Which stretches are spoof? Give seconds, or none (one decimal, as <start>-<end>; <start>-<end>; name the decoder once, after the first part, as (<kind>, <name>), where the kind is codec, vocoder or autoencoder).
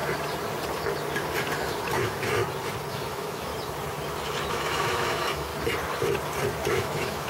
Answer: 2.0-2.4 (autoencoder, DAC-VAE); 2.9-3.5; 4.5-5.5; 6.7-7.3